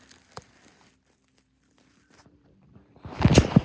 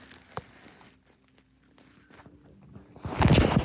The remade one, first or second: first